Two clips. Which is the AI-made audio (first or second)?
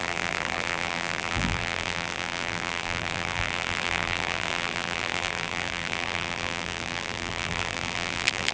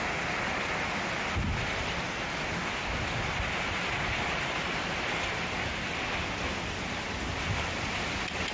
first